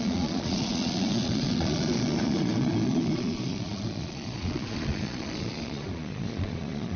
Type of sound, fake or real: fake